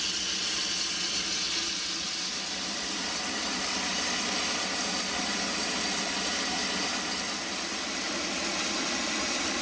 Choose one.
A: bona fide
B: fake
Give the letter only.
A